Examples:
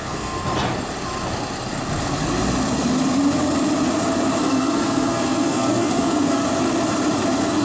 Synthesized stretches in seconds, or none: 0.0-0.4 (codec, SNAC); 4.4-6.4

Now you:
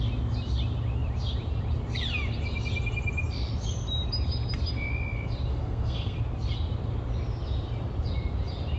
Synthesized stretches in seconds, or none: 5.5-6.2 (codec, SNAC)